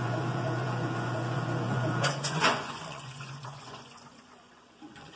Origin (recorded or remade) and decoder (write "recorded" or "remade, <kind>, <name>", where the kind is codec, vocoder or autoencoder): remade, vocoder, Vocos